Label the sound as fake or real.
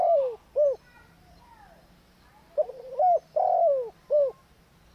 real